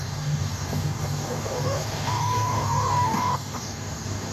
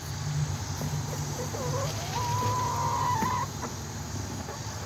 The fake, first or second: first